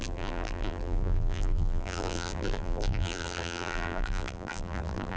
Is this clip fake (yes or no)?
yes